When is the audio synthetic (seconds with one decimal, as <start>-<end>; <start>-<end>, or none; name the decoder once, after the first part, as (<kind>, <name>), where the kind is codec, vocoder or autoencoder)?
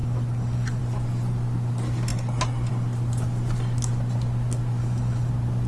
0.0-0.8 (codec, DAC); 4.8-5.3